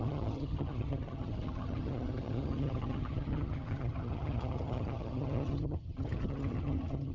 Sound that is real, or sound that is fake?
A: fake